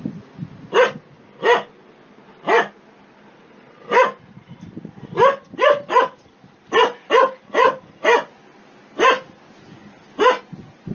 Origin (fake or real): real